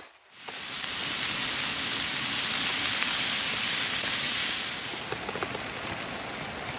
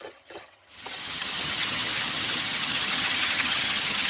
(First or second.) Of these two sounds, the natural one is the first